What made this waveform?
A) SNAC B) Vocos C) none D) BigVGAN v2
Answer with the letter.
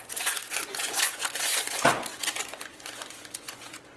B